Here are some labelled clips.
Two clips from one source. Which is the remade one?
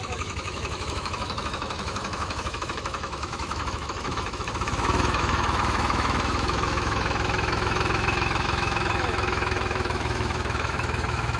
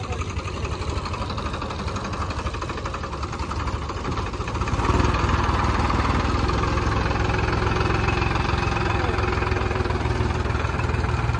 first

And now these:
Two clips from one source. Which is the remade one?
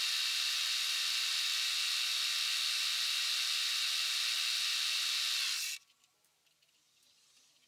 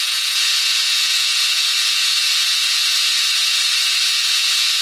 second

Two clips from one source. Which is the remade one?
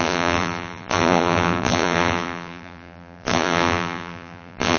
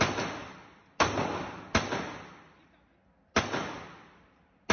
first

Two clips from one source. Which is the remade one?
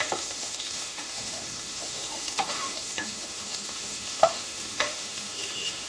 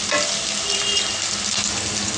first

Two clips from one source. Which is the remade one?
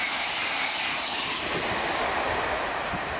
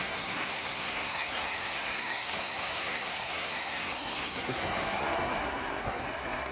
second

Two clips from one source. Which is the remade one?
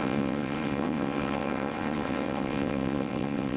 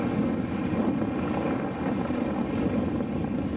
first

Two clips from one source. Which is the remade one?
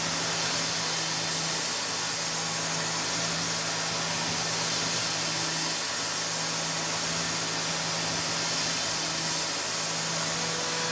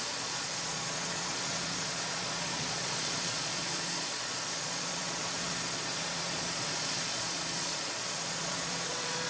second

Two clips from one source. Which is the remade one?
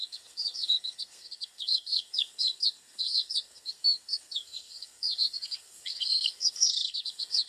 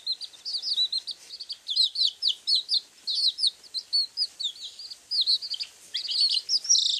first